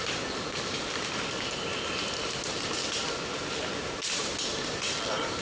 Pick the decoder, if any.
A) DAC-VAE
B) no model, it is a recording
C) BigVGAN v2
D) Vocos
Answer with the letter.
B